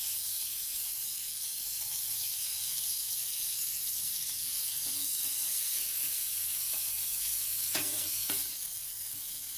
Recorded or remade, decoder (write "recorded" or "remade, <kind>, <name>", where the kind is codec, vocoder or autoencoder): remade, codec, SNAC